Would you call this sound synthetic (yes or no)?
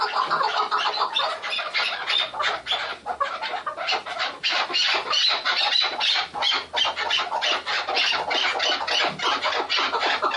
no